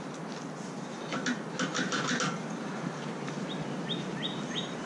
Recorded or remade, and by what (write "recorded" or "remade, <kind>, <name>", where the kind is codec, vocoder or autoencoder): recorded